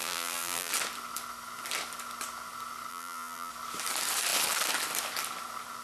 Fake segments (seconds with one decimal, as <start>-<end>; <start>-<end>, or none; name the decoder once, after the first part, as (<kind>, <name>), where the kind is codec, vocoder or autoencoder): 0.0-0.7 (vocoder, BigVGAN v2); 2.9-3.5